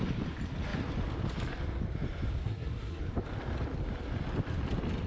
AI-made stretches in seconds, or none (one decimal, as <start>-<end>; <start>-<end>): 2.4-3.0